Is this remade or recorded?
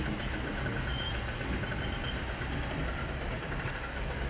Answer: recorded